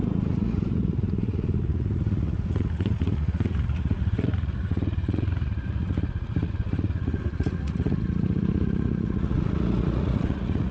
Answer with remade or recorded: remade